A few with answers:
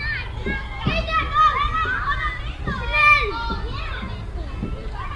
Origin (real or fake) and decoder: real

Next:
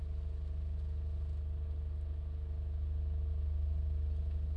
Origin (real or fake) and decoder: real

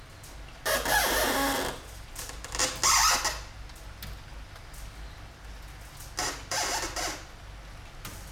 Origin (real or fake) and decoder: real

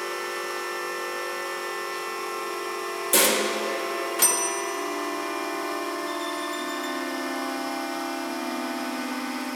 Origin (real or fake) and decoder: real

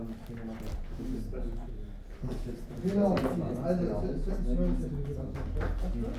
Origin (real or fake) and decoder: real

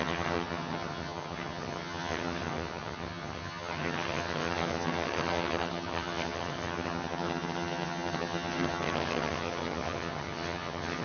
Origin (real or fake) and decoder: fake, vocoder, HiFi-GAN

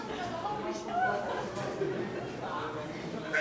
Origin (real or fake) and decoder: real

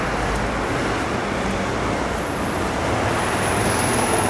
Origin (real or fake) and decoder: real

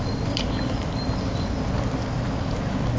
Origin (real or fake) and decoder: real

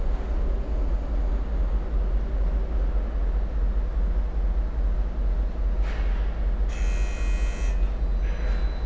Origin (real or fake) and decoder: real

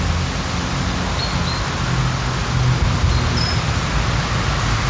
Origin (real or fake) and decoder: real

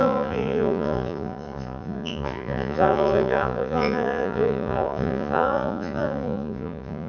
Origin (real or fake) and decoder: fake, vocoder, Vocos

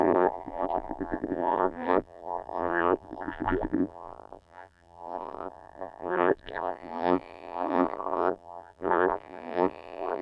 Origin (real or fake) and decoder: fake, vocoder, BigVGAN v2